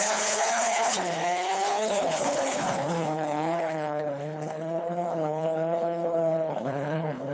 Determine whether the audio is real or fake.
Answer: fake